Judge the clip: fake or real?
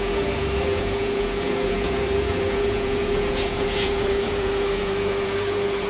fake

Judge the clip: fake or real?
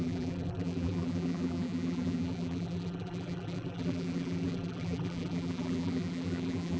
fake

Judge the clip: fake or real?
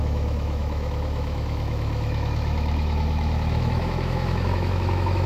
fake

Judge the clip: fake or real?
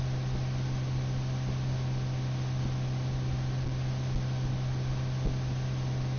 real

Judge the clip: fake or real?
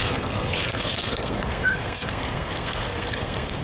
fake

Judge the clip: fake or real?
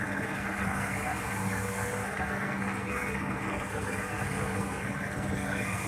fake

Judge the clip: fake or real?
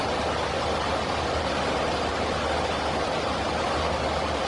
real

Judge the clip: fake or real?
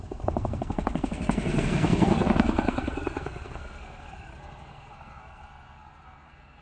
fake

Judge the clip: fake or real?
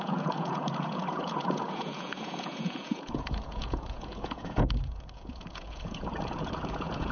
fake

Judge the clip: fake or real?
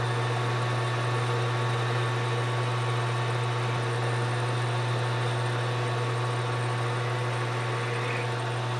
real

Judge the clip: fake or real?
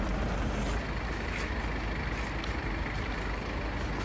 real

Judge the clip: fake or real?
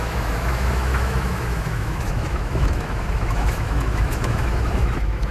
fake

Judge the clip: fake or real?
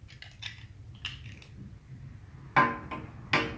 real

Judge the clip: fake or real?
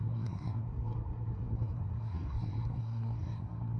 fake